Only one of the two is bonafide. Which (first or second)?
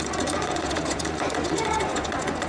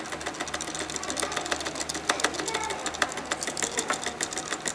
second